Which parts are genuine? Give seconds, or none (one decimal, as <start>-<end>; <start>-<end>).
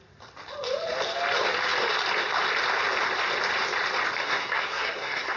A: 0.0-4.2